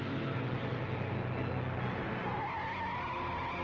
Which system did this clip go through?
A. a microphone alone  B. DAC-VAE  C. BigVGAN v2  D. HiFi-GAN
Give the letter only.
A